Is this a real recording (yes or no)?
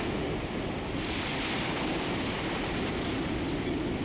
yes